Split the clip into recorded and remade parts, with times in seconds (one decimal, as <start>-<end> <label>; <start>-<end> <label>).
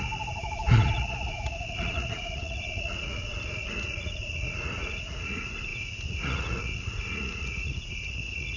0.0-8.6 remade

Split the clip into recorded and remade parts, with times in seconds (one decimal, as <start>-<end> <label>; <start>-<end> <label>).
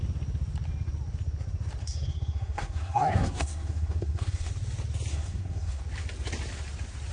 0.0-1.8 recorded; 1.8-4.5 remade; 4.5-5.1 recorded; 5.1-5.8 remade; 5.8-7.1 recorded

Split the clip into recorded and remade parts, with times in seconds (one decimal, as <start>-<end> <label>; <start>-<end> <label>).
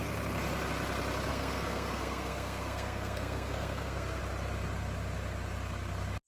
0.0-1.3 recorded; 1.3-4.2 remade; 4.2-6.3 recorded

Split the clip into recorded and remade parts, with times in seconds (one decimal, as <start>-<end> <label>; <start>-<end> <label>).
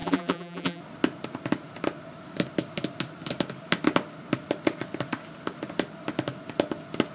0.0-0.8 remade; 0.8-7.1 recorded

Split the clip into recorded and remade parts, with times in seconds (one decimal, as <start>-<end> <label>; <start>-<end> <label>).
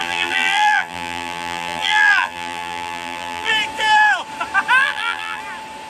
0.0-3.5 remade; 3.5-4.8 recorded; 4.8-5.4 remade; 5.4-5.9 recorded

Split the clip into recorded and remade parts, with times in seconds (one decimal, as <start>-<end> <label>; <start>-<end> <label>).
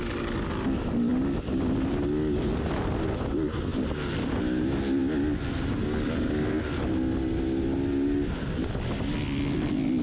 0.0-10.0 recorded